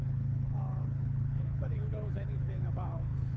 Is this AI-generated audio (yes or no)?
yes